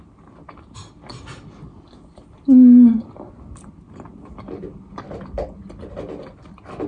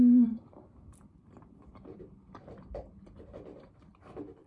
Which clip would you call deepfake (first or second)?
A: second